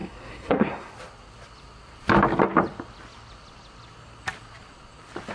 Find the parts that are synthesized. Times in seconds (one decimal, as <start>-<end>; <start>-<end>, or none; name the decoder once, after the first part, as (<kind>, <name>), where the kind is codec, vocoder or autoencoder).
0.0-0.9 (codec, SNAC)